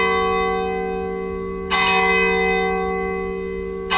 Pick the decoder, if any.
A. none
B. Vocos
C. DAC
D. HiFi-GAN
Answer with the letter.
A